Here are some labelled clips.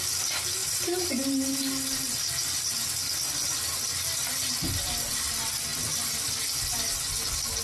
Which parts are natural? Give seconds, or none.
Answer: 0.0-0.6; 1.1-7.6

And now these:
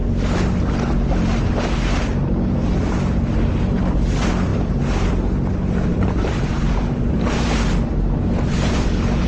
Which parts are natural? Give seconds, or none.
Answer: 0.0-5.9; 7.7-9.3